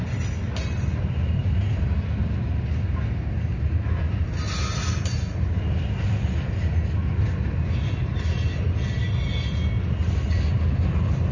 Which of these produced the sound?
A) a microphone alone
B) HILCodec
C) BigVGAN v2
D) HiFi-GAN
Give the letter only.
A